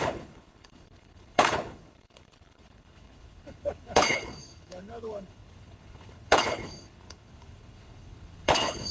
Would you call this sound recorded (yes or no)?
no